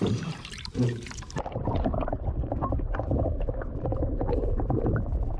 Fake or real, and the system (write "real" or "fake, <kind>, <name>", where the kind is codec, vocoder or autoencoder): fake, vocoder, BigVGAN v2